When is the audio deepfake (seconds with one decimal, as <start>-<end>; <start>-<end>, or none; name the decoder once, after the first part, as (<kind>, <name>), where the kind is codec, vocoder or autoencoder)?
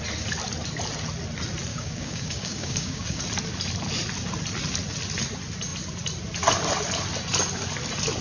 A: 1.7-3.2 (codec, DAC)